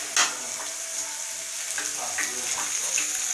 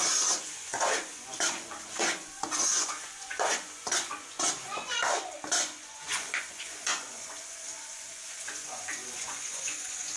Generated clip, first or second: second